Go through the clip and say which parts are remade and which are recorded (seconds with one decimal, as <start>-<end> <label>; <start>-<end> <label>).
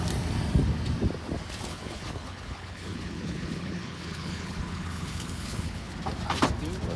0.0-1.7 recorded; 1.7-5.9 remade; 5.9-7.0 recorded